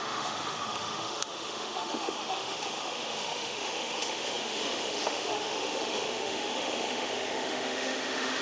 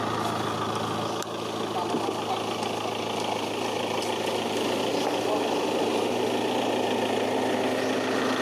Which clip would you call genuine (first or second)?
second